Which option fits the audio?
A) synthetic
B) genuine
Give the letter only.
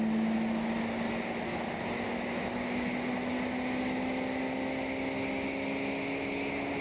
B